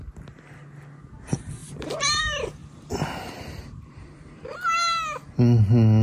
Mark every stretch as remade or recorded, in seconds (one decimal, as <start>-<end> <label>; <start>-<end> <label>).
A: 0.0-1.6 recorded; 1.6-2.2 remade; 2.2-2.6 recorded; 2.6-4.4 remade; 4.4-6.0 recorded